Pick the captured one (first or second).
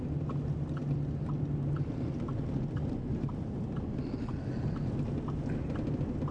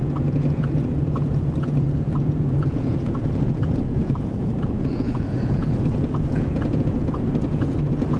first